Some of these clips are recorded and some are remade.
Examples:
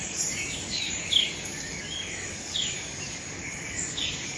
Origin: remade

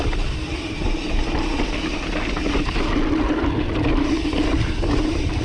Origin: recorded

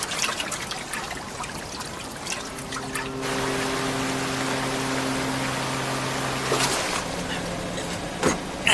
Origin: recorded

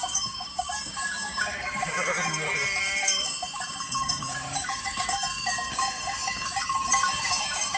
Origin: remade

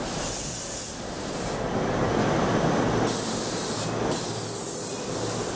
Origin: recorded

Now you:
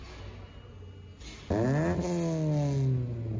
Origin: recorded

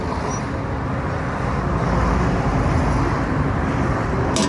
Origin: recorded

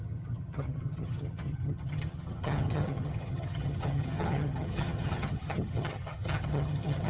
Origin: remade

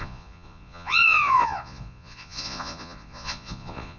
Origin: remade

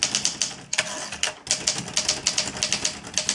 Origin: recorded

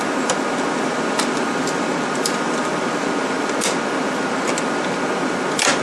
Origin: recorded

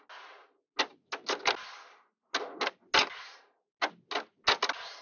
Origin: recorded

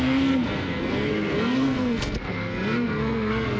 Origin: remade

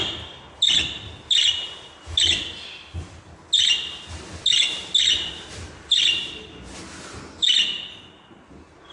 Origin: recorded